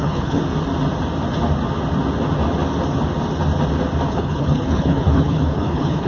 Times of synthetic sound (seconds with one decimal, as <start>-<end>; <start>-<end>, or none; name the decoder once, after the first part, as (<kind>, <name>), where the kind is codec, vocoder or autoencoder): 0.0-0.4 (codec, HILCodec); 4.1-6.1